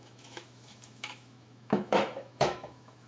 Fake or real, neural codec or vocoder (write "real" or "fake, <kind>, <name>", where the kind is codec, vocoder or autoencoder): fake, autoencoder, DAC-VAE